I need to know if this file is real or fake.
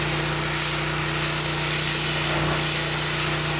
real